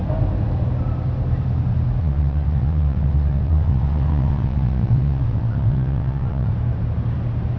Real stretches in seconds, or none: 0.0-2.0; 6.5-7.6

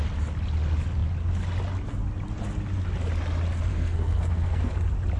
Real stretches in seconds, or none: 0.0-3.7; 4.7-5.2

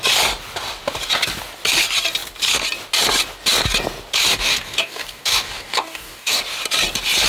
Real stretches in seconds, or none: 0.0-4.3; 6.4-7.3

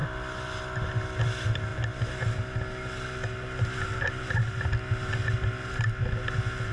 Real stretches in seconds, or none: 0.0-6.7

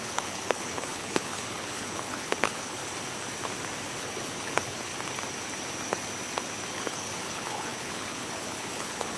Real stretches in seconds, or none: 2.8-4.0; 4.9-6.7

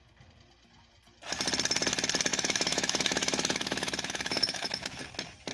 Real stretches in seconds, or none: 0.0-2.3; 5.0-5.5

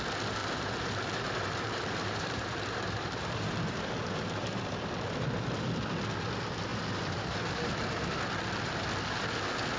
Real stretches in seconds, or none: 0.0-0.4; 4.9-6.7; 8.1-9.8